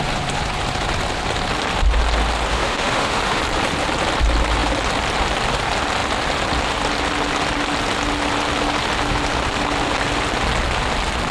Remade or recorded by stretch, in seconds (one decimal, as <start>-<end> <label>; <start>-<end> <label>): 0.0-2.5 recorded; 2.5-3.4 remade; 3.4-11.3 recorded